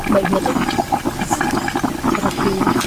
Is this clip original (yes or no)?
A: yes